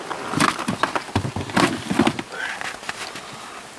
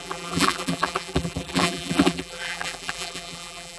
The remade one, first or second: second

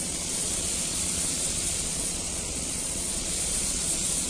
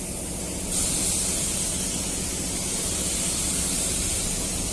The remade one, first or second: first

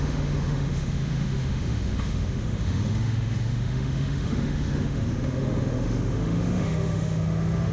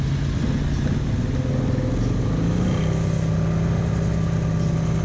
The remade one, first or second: first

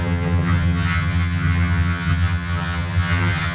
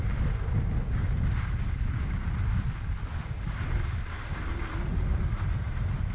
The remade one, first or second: first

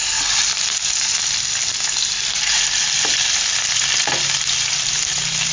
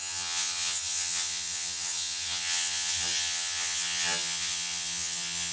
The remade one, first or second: second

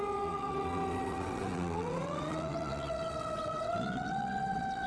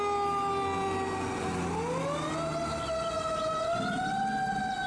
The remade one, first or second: first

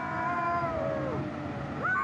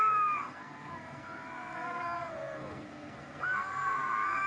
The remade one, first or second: second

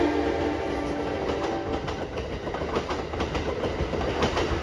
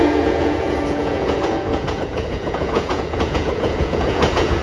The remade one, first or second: second